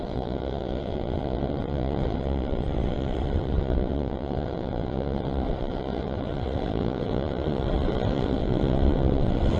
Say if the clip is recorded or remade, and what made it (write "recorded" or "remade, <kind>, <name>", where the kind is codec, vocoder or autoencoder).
remade, vocoder, WaveNeXt